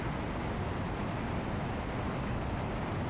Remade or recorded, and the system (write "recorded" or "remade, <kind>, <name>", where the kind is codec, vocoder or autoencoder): recorded